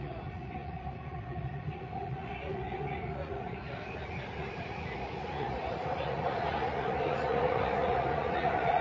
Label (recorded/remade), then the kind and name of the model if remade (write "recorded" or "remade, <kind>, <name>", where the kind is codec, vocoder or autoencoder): remade, vocoder, Vocos